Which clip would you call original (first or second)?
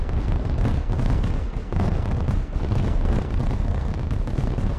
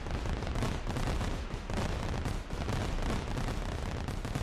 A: second